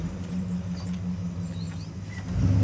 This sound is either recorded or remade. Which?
recorded